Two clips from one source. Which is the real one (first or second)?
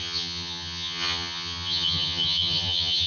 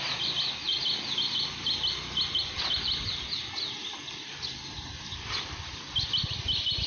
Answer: second